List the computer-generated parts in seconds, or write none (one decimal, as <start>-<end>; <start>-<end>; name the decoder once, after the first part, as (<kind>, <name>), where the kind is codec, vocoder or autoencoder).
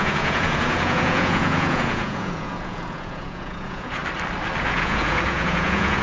0.0-4.0 (vocoder, Vocos); 4.6-6.0